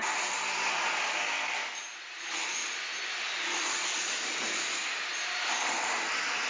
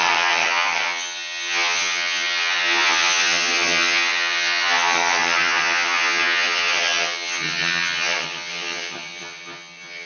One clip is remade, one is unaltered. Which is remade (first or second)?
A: second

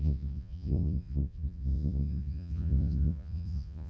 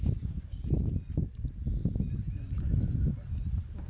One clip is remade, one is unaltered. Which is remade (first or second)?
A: first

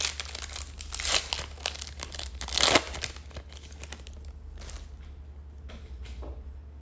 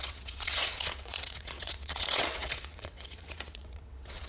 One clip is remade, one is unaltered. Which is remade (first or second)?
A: second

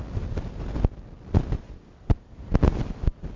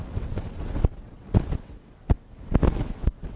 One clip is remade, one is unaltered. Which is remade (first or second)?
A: second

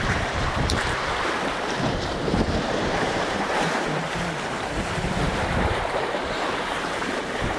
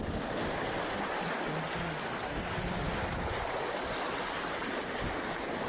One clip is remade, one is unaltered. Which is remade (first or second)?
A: first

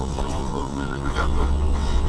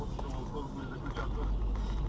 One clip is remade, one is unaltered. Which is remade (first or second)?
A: first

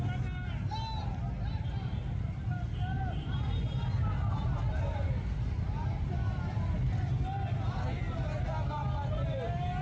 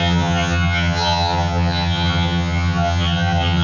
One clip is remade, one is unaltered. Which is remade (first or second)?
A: second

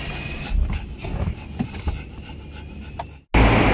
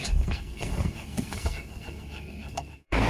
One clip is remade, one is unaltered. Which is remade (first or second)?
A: second